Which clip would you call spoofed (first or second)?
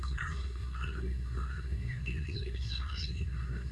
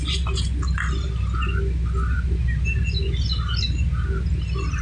first